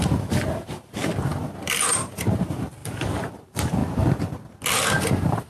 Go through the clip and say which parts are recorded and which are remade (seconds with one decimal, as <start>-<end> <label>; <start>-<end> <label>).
0.0-3.8 remade; 3.8-5.0 recorded; 5.0-5.5 remade